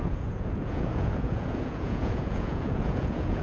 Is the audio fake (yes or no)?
yes